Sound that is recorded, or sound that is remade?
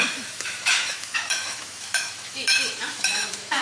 remade